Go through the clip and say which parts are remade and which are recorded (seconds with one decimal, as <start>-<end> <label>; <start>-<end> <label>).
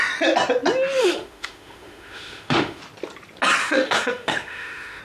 0.0-1.0 recorded; 1.0-2.8 remade; 2.8-3.6 recorded; 3.6-5.0 remade